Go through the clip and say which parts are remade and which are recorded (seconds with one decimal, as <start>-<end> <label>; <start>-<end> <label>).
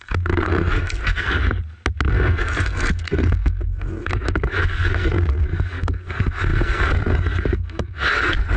0.0-1.4 remade; 1.4-2.1 recorded; 2.1-8.6 remade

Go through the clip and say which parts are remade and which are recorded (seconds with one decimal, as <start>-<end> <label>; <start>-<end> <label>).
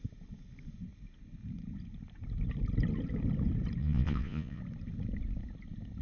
0.0-3.8 recorded; 3.8-4.6 remade; 4.6-6.0 recorded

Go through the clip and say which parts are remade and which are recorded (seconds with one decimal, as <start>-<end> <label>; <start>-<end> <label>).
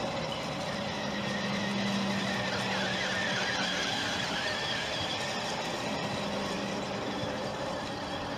0.0-3.8 recorded; 3.8-4.3 remade; 4.3-8.4 recorded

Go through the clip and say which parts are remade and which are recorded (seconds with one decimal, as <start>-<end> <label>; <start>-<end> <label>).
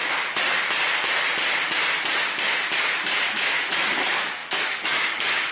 0.0-3.3 recorded; 3.3-5.5 remade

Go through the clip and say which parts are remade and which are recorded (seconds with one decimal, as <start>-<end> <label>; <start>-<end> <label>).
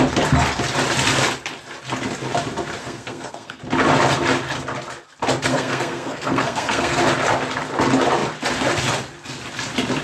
0.0-2.8 recorded; 2.8-3.6 remade; 3.6-5.5 recorded; 5.5-7.0 remade; 7.0-10.0 recorded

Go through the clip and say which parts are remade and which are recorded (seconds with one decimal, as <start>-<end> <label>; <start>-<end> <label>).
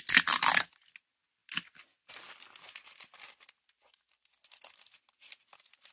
0.0-5.9 recorded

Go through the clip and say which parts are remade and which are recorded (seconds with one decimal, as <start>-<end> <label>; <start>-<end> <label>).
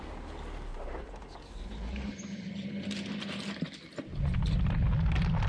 0.0-0.7 recorded; 0.7-2.5 remade; 2.5-5.5 recorded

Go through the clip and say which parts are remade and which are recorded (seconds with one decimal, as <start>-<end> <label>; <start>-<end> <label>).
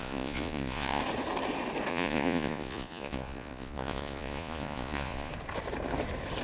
0.0-1.0 remade; 1.0-1.9 recorded; 1.9-5.3 remade; 5.3-6.4 recorded